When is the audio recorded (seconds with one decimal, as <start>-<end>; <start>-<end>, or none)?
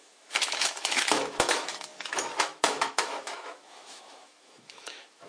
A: none